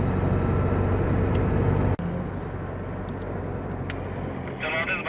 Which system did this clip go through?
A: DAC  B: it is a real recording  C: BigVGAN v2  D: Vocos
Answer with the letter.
B